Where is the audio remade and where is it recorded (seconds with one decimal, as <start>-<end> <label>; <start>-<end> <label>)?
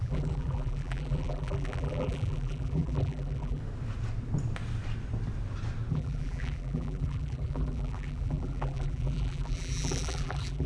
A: 0.0-3.6 remade; 3.6-5.9 recorded; 5.9-10.7 remade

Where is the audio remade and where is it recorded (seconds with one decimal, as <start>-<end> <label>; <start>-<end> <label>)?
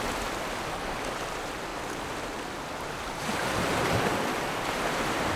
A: 0.0-1.7 recorded; 1.7-4.9 remade; 4.9-5.4 recorded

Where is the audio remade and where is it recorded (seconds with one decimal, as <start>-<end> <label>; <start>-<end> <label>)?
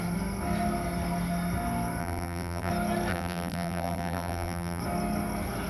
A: 0.0-2.0 recorded; 2.0-2.7 remade; 2.7-3.1 recorded; 3.1-4.8 remade; 4.8-5.7 recorded